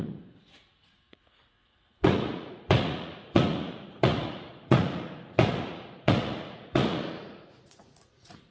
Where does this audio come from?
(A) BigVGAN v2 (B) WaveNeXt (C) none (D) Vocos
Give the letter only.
D